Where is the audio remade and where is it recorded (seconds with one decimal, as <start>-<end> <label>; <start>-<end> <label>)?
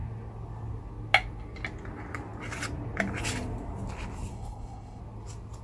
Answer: 0.0-4.3 recorded; 4.3-5.0 remade; 5.0-5.6 recorded